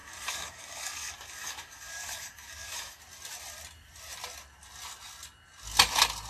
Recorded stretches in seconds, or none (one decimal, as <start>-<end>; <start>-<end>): 3.0-6.3